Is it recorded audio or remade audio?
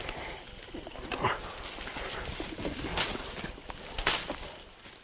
recorded